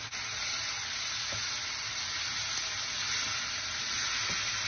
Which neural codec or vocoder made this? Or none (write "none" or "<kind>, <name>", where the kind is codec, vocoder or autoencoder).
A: none